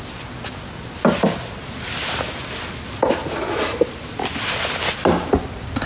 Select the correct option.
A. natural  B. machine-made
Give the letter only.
A